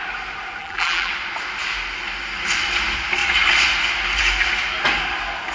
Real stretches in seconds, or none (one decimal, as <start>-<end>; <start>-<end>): 0.0-0.6; 1.1-5.5